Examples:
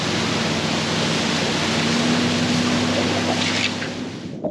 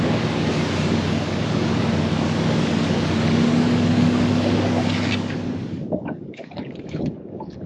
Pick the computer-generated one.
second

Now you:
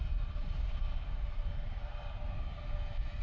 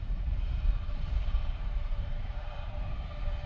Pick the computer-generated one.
second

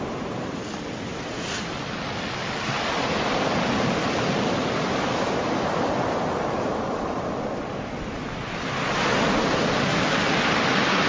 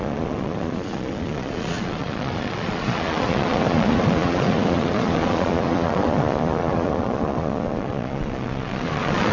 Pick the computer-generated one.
second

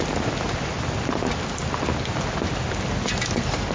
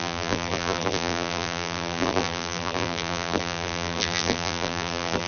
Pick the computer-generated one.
second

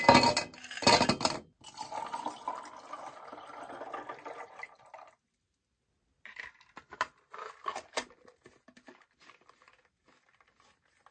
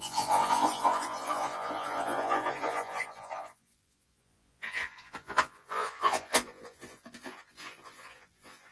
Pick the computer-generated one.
second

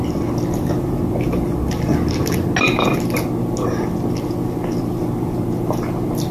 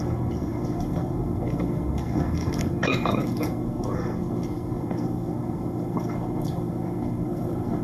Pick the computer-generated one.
second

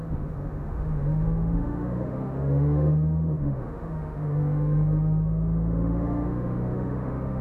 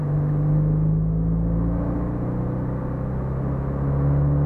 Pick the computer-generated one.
first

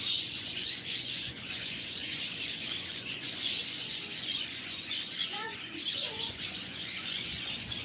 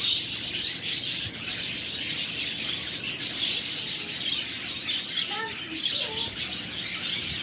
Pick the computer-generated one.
first